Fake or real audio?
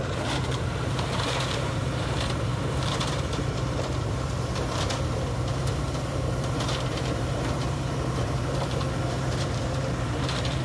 fake